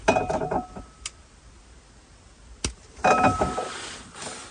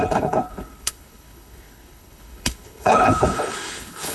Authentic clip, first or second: first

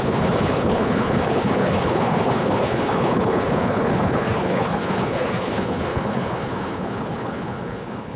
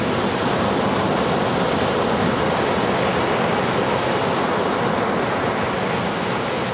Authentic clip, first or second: second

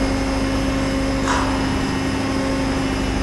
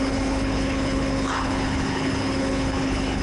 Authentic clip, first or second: first